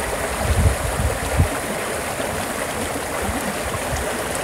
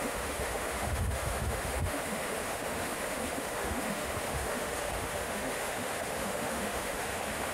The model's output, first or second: second